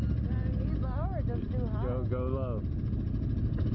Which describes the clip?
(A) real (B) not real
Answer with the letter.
A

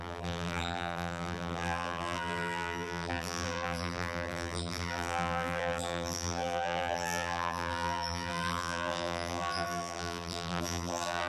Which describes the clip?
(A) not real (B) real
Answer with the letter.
A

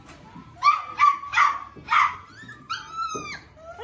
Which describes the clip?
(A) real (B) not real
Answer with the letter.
A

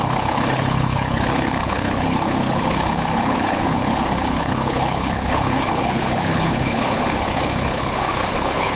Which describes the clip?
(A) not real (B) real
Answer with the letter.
A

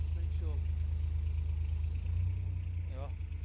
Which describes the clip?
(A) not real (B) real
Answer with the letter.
B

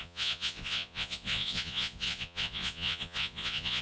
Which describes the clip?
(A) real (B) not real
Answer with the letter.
B